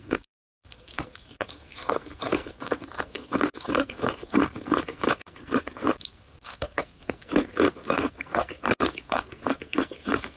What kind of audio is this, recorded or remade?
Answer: remade